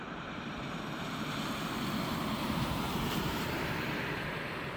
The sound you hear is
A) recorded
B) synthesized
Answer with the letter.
B